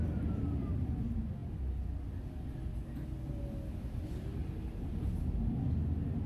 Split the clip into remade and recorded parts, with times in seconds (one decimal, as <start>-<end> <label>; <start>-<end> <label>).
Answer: 0.0-4.4 recorded; 4.4-5.1 remade; 5.1-6.3 recorded